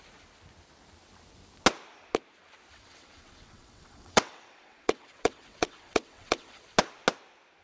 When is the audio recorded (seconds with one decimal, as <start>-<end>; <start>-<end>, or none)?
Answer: 0.0-2.7; 6.6-7.6